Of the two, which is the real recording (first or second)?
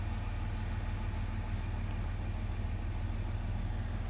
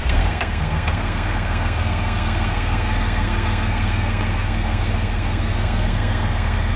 first